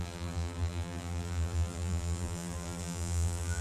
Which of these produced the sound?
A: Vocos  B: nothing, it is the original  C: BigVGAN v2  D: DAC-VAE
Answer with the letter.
C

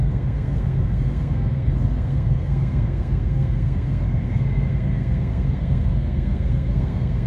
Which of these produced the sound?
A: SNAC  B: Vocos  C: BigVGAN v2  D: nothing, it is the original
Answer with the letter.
A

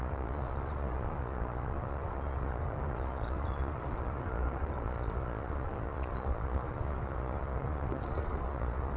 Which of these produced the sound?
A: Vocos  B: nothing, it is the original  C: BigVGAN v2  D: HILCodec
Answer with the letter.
A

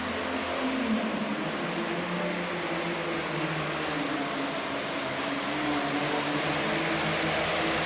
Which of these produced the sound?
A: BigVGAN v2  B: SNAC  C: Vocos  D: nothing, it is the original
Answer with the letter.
D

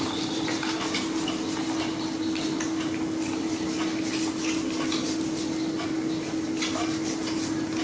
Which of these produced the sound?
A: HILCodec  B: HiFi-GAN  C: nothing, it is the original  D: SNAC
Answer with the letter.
C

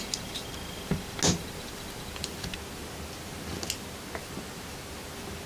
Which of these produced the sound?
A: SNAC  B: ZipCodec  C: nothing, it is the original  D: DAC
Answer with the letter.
C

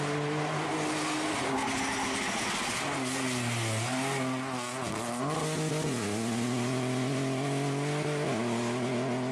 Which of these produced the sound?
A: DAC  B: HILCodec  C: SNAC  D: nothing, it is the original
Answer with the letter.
D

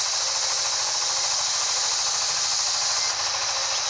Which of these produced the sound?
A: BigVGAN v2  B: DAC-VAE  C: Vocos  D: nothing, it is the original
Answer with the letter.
D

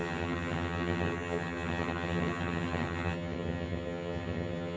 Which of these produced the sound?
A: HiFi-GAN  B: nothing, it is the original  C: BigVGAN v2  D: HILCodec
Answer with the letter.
A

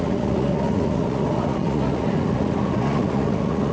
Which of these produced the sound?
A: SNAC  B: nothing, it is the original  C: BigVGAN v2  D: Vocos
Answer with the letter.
D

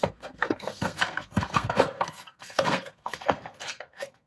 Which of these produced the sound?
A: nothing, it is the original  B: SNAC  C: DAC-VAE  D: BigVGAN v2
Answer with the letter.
B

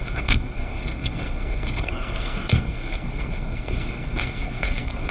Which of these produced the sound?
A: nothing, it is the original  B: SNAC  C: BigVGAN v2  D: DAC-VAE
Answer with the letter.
B